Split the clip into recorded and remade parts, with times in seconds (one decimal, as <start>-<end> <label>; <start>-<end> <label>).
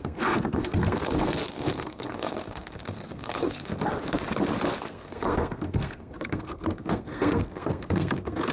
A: 0.0-3.7 remade; 3.7-4.8 recorded; 4.8-8.5 remade